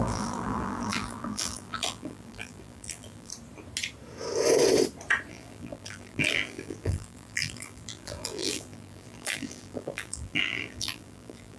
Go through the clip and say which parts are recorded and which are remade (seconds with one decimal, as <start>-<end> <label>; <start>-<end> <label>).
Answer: 0.0-3.3 remade; 3.3-5.3 recorded; 5.3-11.6 remade

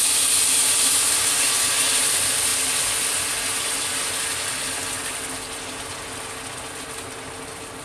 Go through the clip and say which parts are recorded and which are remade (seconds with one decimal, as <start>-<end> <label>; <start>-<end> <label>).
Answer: 0.0-7.8 recorded